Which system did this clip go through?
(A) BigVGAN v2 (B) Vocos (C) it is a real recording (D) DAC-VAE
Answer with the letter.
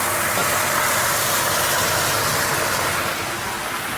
C